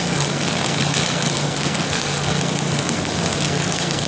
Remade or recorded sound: remade